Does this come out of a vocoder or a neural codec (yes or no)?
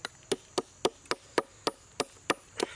no